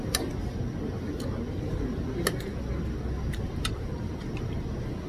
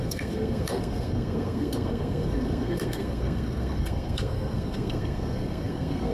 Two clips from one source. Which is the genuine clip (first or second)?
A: first